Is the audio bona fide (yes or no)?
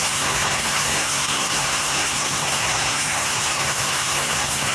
no